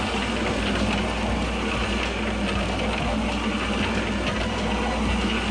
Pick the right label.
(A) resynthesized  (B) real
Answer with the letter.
B